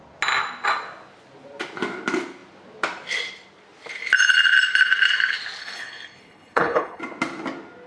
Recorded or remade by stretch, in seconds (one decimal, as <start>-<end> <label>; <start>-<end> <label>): 0.0-5.6 recorded; 5.6-7.0 remade; 7.0-7.9 recorded